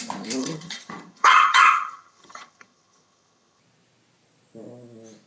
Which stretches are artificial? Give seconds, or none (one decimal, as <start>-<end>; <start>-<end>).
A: 0.4-3.6